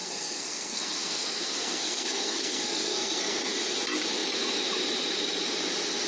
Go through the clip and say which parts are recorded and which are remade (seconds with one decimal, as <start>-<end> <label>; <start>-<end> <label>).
0.0-3.5 remade; 3.5-6.1 recorded